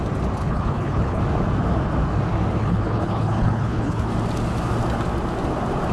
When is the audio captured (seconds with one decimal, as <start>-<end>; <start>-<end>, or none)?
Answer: 0.0-0.4; 1.2-2.6; 4.1-5.9